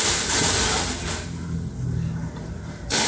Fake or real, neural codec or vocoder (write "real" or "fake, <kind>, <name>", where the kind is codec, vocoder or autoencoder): real